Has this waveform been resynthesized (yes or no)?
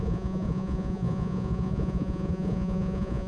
yes